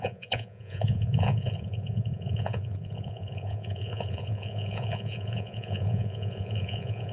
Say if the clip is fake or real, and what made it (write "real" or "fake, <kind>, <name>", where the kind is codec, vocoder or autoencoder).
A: fake, vocoder, Vocos